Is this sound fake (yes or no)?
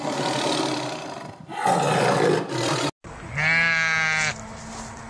no